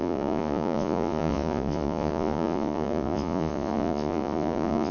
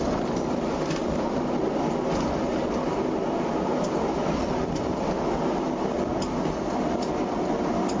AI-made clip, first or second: first